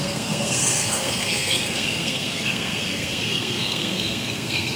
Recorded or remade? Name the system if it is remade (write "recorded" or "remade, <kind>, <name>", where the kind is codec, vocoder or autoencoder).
remade, codec, SNAC